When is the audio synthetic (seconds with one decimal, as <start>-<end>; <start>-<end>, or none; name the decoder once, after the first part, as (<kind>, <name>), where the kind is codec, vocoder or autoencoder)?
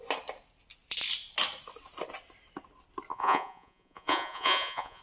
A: 3.1-5.0 (vocoder, Vocos)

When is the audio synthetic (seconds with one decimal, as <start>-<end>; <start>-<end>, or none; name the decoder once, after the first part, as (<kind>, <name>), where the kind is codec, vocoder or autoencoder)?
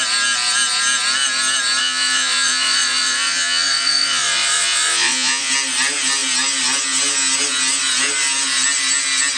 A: 1.8-5.5 (vocoder, Vocos)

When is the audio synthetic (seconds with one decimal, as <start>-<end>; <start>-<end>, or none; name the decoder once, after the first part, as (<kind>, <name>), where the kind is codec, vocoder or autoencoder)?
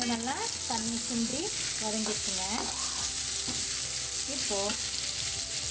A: none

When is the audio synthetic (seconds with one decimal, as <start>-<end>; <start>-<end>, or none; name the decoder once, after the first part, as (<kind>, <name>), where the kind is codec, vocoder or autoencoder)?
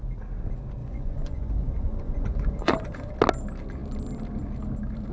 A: 0.8-3.1 (vocoder, Vocos)